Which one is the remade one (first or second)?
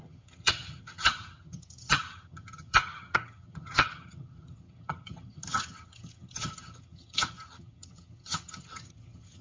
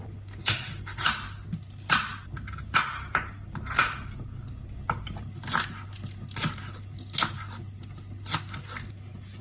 first